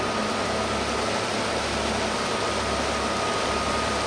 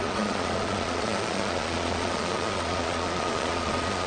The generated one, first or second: second